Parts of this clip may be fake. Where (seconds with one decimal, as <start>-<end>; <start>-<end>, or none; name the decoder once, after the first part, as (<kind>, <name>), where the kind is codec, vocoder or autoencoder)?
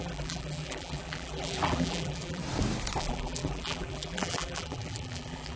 0.0-2.4 (vocoder, BigVGAN v2); 3.0-5.6